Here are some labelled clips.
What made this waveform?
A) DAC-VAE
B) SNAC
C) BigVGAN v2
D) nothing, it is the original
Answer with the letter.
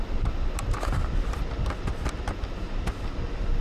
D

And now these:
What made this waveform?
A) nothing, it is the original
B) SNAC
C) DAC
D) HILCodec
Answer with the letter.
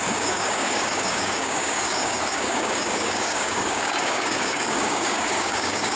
C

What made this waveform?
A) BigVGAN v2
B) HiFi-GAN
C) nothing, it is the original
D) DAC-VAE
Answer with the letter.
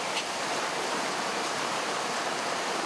A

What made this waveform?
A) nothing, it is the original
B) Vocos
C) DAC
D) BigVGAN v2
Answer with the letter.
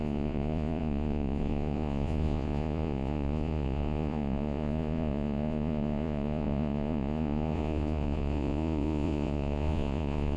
B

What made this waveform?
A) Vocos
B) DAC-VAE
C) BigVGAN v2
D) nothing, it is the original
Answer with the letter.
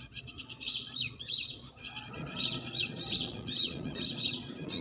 A